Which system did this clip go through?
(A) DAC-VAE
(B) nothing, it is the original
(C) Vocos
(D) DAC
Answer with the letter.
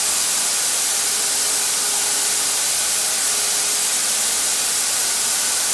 B